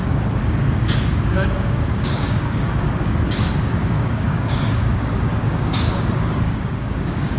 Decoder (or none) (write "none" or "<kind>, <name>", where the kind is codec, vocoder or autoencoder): codec, DAC